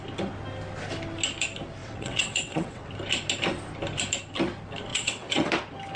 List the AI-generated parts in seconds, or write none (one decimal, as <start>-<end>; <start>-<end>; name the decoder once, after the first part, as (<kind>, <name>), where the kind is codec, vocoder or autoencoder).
1.8-2.9 (vocoder, WaveNeXt); 4.9-5.5